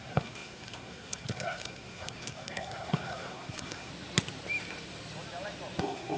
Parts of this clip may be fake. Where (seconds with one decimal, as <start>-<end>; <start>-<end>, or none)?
0.0-3.9; 5.8-6.2